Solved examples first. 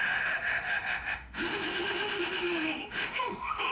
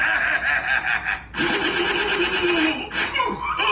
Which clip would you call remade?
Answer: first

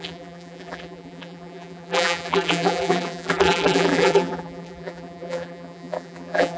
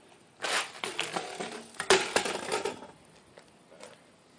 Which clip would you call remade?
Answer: first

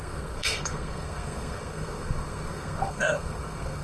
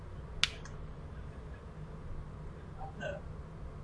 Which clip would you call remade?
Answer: first